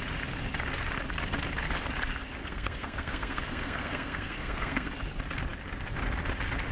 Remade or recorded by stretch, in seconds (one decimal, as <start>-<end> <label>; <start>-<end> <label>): 0.0-2.4 recorded; 2.4-4.9 remade; 4.9-6.7 recorded